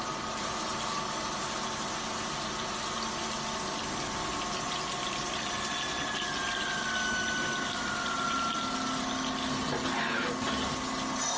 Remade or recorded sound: recorded